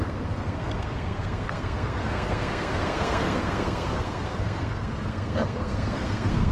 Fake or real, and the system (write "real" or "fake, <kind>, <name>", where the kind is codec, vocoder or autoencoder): fake, codec, SNAC